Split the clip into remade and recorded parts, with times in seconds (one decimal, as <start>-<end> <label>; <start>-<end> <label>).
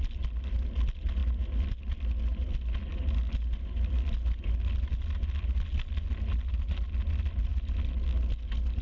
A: 0.0-8.8 recorded